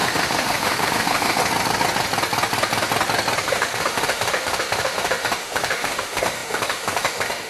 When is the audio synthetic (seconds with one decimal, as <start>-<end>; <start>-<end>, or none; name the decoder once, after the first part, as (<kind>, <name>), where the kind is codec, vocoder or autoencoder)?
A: 0.0-1.4 (autoencoder, DAC-VAE); 3.4-7.5